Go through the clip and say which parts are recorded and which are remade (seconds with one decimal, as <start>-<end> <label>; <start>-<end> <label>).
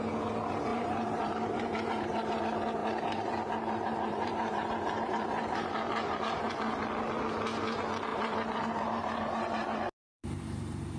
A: 0.0-0.7 recorded; 0.7-2.4 remade; 2.4-2.8 recorded; 2.8-6.5 remade; 6.5-8.1 recorded; 8.1-11.0 remade